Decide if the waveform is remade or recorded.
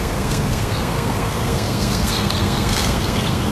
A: remade